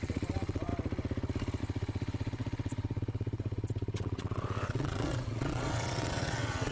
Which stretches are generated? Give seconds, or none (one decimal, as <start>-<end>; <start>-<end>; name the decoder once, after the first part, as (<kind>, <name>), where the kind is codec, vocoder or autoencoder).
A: 0.0-0.7 (vocoder, WaveNeXt); 1.6-6.7